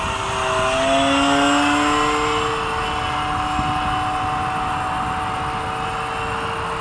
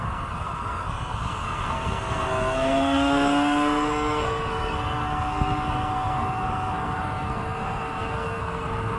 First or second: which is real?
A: first